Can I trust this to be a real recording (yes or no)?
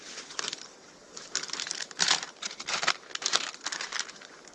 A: no